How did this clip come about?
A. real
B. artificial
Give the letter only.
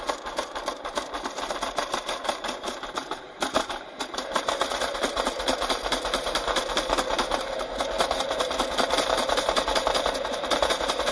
B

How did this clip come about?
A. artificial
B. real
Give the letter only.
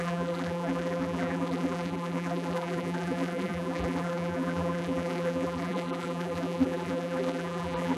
A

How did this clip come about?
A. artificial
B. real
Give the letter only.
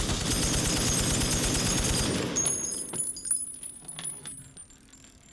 B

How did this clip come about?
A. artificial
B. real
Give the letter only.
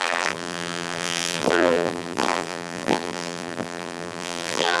A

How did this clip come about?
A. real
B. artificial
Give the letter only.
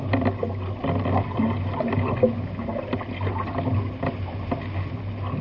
A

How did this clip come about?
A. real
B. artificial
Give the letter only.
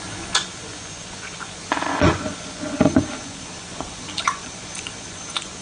B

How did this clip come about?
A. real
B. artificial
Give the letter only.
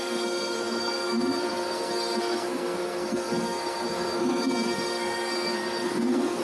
B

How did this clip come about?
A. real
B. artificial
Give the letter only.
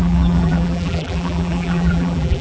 B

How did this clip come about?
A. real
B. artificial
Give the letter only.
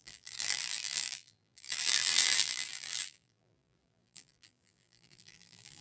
B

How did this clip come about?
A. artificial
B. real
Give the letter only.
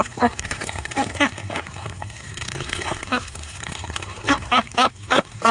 A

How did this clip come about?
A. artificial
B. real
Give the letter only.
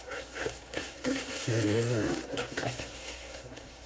A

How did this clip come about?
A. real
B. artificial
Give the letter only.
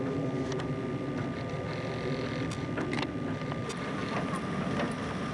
A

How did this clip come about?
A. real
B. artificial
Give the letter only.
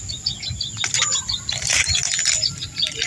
A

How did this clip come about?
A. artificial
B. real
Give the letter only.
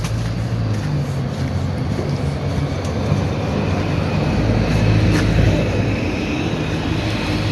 B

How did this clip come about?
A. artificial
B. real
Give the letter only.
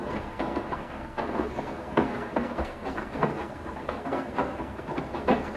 A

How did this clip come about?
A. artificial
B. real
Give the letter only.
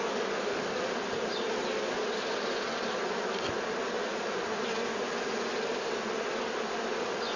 B